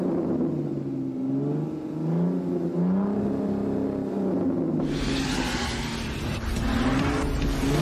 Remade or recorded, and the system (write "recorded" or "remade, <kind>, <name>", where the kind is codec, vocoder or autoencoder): recorded